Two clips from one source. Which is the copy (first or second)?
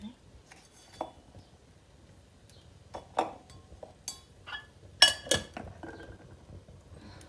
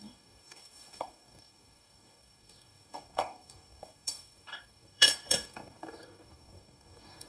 second